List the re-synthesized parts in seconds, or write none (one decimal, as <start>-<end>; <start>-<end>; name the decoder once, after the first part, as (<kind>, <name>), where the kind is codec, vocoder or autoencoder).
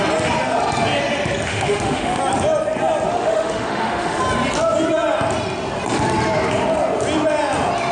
1.5-2.2 (autoencoder, DAC-VAE); 3.1-4.2